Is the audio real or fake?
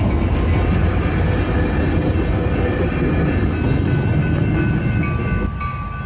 real